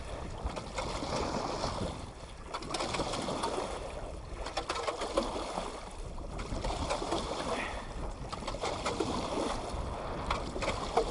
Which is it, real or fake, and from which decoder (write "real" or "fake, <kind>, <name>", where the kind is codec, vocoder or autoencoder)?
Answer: real